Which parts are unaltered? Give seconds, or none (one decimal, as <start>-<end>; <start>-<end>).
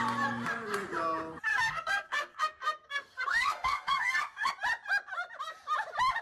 0.0-1.5; 4.5-6.2